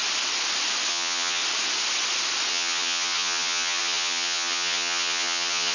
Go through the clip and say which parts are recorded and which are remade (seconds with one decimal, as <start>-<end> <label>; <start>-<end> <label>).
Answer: 0.0-0.9 recorded; 0.9-1.4 remade; 1.4-2.5 recorded; 2.5-5.7 remade